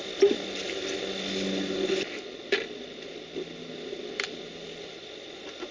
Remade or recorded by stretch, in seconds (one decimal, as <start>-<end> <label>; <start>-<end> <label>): 0.0-5.7 recorded